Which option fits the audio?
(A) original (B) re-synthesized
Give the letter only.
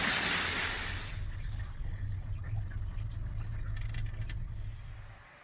A